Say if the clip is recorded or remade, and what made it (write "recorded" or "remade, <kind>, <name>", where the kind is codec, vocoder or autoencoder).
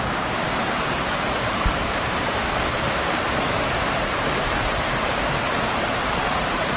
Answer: remade, vocoder, BigVGAN v2